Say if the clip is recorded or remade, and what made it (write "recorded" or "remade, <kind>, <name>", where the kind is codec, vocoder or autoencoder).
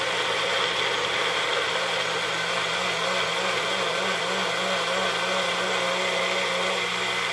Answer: recorded